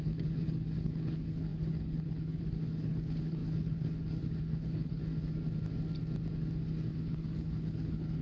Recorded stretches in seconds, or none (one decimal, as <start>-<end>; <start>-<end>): 5.0-6.9